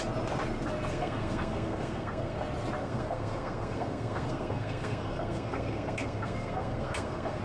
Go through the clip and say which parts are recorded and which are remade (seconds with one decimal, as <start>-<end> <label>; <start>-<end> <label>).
0.0-0.9 recorded; 0.9-2.4 remade; 2.4-2.8 recorded; 2.8-7.4 remade